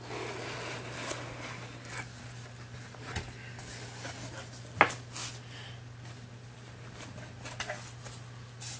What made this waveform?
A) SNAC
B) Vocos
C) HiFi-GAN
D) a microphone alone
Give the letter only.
D